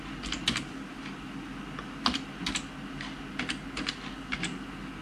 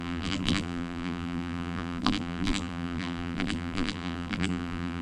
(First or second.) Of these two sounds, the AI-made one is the second